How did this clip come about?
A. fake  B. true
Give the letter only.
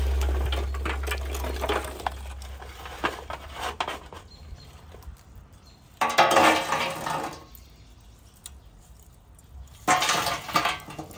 B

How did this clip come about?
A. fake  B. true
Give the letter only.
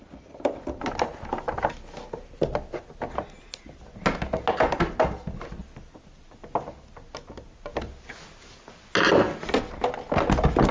B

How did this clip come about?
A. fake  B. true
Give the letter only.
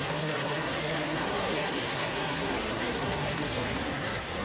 A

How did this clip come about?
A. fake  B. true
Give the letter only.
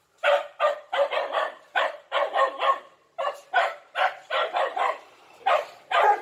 A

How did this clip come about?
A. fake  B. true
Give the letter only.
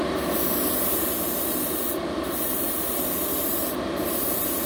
B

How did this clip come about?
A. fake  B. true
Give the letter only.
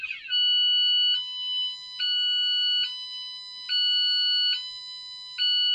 B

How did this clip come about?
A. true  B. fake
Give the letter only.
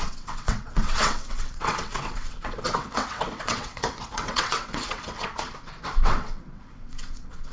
B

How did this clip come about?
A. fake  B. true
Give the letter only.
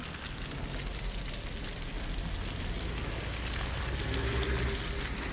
B